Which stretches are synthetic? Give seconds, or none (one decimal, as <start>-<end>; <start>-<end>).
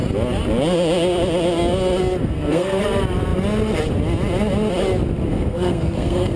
2.2-2.8; 5.3-6.4